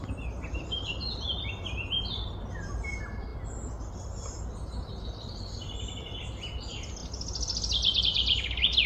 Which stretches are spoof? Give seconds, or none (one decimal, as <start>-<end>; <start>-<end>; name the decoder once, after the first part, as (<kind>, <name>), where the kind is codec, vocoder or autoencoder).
none